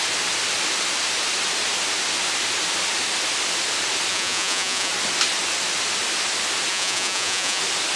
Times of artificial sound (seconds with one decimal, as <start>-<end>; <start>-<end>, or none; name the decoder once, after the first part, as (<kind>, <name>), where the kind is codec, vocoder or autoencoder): 4.1-4.9 (vocoder, Vocos); 6.7-7.6